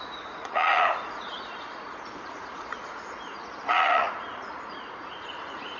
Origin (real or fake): fake